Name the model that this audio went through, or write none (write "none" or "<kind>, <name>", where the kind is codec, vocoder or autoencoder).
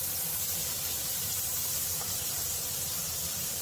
vocoder, BigVGAN v2